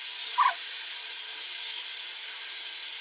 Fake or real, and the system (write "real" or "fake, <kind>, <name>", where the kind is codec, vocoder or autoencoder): real